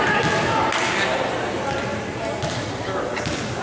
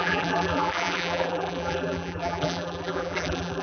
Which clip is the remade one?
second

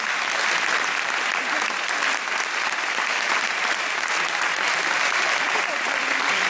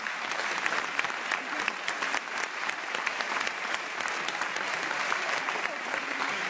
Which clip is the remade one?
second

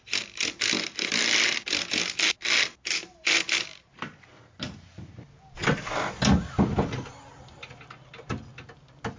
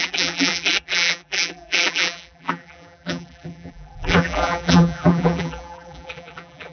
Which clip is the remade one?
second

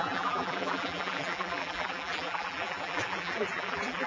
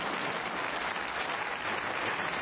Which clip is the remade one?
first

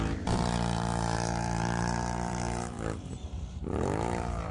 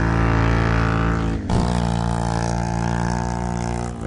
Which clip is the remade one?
first